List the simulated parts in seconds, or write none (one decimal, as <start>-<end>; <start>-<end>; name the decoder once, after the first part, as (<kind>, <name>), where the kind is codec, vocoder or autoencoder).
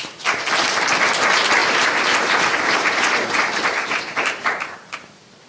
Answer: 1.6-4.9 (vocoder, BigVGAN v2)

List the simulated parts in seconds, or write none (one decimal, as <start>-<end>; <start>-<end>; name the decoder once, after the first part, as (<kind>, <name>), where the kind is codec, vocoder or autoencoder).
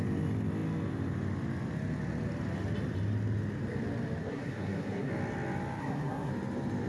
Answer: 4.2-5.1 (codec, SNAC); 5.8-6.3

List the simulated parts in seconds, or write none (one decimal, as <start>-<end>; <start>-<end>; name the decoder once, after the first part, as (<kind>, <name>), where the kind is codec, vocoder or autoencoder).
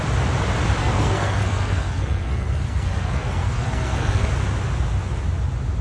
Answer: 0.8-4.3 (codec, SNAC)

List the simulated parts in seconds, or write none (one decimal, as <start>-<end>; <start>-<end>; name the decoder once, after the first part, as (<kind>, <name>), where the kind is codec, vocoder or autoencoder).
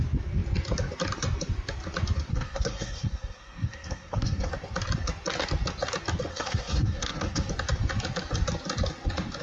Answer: 2.3-4.5 (codec, SNAC); 6.3-7.5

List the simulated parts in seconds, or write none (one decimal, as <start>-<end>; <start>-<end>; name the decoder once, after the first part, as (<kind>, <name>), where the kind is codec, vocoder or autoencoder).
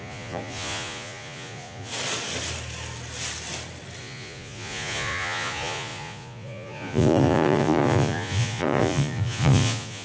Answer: 0.0-1.9 (vocoder, Vocos); 4.0-10.0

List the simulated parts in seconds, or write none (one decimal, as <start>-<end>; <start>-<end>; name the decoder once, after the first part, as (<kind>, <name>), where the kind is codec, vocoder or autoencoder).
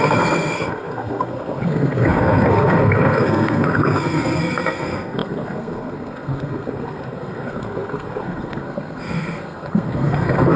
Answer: 0.0-10.6 (codec, SNAC)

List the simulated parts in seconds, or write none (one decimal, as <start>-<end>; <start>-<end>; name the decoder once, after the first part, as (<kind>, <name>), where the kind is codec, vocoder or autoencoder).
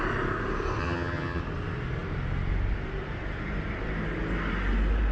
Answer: 0.8-1.4 (vocoder, HiFi-GAN)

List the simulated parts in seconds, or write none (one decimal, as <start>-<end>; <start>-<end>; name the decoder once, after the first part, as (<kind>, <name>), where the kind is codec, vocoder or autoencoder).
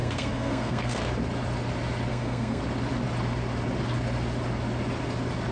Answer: 0.0-1.0 (codec, SNAC); 2.1-2.6